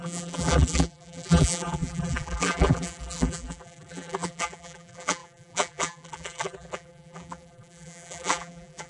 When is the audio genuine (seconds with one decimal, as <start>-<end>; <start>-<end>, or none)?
none